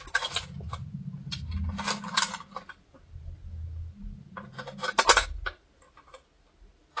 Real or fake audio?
real